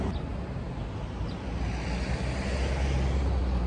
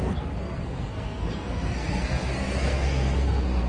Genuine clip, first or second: first